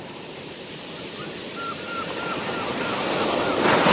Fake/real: fake